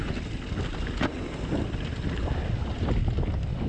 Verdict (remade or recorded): recorded